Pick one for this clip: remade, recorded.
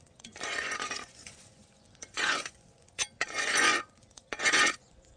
remade